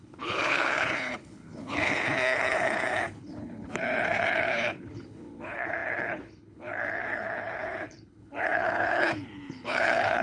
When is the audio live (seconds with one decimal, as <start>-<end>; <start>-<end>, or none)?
none